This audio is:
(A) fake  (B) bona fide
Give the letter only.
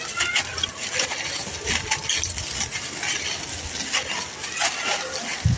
B